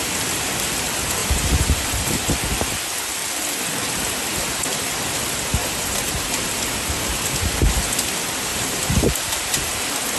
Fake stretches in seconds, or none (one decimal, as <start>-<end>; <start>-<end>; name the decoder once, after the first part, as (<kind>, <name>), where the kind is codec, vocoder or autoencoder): 1.2-2.3 (vocoder, BigVGAN v2); 5.6-6.4; 8.5-10.2